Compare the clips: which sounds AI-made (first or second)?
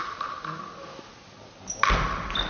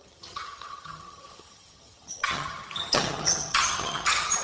second